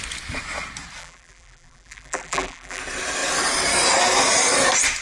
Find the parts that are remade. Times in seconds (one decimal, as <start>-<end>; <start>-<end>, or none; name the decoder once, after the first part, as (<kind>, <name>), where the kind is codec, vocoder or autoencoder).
1.0-2.8 (vocoder, BigVGAN v2)